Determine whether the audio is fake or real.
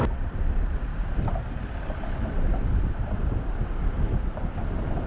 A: fake